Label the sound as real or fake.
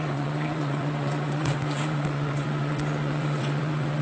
fake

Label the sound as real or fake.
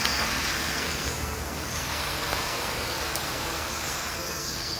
fake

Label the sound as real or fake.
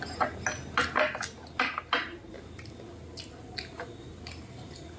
real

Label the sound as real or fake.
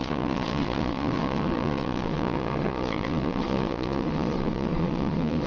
fake